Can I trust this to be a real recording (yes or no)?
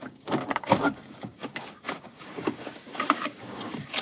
no